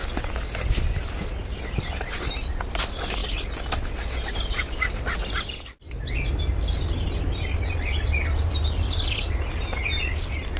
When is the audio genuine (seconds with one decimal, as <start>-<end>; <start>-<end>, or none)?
0.0-10.6